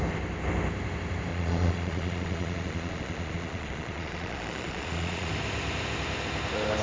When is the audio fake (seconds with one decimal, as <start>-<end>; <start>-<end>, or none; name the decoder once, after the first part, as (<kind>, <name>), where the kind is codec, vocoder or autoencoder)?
1.3-5.3 (vocoder, Vocos)